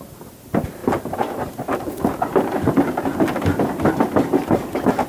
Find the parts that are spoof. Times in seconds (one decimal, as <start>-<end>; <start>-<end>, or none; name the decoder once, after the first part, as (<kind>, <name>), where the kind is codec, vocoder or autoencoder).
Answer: none